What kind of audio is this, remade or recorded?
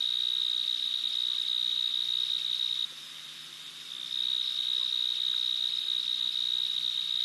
recorded